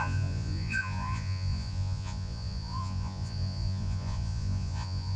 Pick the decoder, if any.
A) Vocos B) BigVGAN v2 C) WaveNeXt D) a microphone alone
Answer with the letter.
A